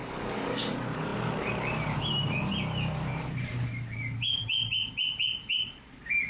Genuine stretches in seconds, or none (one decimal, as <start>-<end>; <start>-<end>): 0.6-6.3